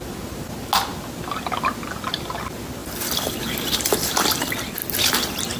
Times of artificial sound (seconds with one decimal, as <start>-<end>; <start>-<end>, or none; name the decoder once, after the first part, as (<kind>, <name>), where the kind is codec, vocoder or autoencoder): none